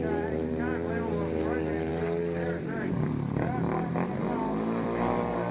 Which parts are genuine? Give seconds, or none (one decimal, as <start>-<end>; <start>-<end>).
0.0-5.5